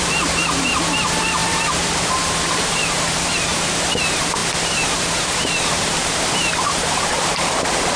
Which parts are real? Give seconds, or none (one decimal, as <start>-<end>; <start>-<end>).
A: none